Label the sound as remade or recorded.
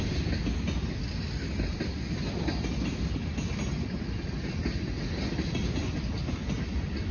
recorded